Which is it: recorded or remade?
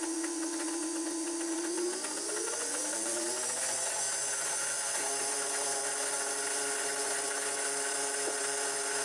remade